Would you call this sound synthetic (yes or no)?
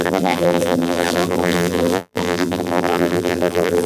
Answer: yes